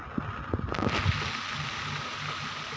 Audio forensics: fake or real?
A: real